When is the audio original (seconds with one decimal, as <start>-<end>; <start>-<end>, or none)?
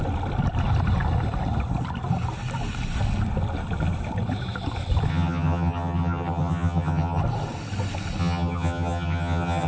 0.0-5.1; 7.2-8.2